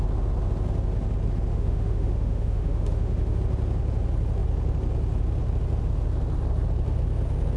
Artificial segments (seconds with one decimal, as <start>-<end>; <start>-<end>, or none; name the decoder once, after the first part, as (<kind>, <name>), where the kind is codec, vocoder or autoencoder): 1.5-3.4 (autoencoder, DAC-VAE)